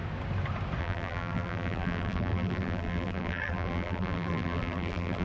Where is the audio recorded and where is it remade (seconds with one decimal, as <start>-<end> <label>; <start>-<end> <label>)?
0.0-0.8 recorded; 0.8-5.2 remade